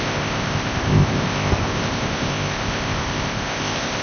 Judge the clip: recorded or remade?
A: remade